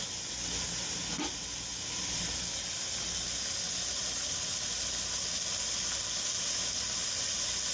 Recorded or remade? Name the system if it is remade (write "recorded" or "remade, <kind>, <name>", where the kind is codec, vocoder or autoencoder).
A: recorded